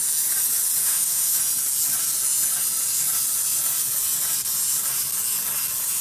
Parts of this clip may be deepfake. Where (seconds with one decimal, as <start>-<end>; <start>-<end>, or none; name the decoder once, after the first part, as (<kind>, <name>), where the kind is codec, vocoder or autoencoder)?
0.8-1.4 (autoencoder, DAC-VAE)